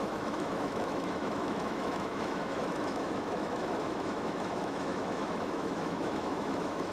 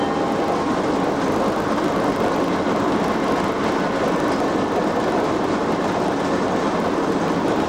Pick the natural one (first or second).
second